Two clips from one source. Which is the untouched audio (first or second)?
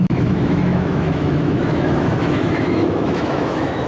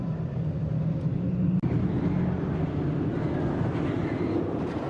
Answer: second